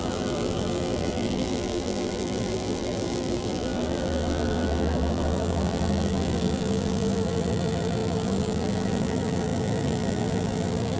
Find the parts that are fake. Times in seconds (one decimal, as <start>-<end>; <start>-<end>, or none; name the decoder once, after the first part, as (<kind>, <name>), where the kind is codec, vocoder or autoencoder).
0.0-11.0 (vocoder, BigVGAN v2)